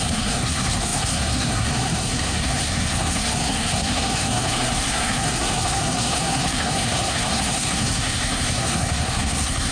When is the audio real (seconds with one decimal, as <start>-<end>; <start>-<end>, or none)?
none